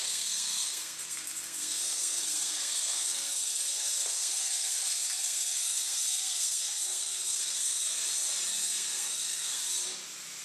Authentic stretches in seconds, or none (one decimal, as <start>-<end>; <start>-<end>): 8.0-8.6; 9.6-10.4